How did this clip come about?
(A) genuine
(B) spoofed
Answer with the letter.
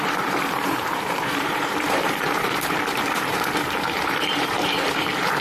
B